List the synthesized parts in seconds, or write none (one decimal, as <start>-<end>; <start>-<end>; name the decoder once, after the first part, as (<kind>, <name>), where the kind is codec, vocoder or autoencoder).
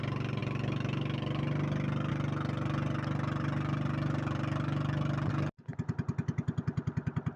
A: none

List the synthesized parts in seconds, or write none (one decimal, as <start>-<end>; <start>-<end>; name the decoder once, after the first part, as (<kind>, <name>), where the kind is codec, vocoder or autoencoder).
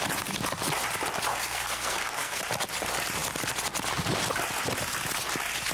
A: 1.3-2.4 (codec, SNAC)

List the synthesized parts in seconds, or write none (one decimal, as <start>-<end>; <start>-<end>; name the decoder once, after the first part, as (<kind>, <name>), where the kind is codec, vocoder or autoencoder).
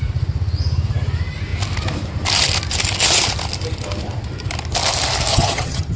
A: 5.3-6.0 (vocoder, HiFi-GAN)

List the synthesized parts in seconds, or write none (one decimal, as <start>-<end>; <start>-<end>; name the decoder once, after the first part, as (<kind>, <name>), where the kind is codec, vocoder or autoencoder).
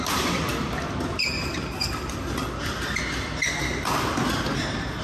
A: 1.8-3.0 (vocoder, BigVGAN v2)